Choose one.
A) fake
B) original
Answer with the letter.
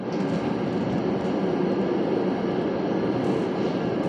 B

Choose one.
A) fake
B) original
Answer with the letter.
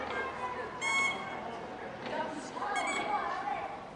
B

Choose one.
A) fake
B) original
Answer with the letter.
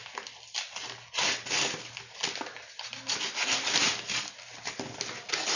B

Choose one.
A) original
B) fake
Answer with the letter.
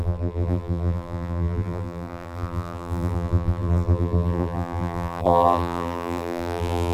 B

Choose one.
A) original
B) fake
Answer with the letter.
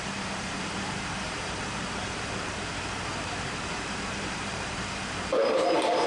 B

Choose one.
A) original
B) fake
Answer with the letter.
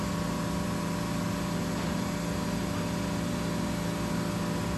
A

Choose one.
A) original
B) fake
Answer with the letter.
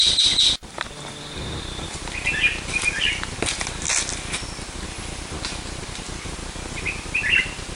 A